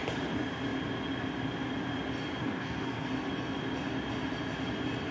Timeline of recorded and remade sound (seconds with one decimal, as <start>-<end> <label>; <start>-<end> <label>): 0.0-2.4 recorded; 2.4-3.1 remade; 3.1-5.1 recorded